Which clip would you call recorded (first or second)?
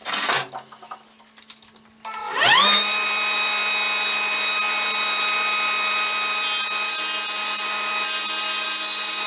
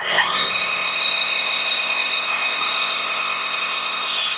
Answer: first